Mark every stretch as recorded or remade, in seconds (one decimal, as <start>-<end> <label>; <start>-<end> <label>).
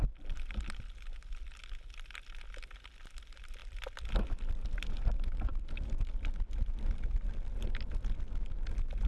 0.0-3.6 recorded; 3.6-7.7 remade; 7.7-9.1 recorded